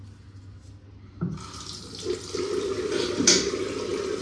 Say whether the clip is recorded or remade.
recorded